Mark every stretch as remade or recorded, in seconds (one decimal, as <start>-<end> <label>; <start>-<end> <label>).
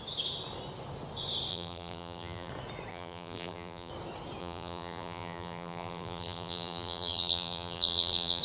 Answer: 0.0-1.5 recorded; 1.5-2.5 remade; 2.5-2.9 recorded; 2.9-3.9 remade; 3.9-4.4 recorded; 4.4-8.4 remade